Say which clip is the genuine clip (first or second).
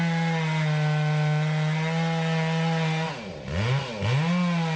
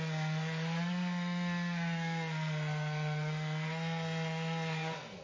first